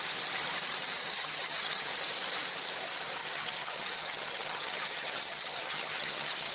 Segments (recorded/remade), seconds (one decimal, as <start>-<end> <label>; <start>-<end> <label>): 0.0-1.0 recorded; 1.0-1.9 remade; 1.9-3.2 recorded; 3.2-6.5 remade